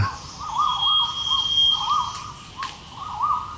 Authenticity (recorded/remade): recorded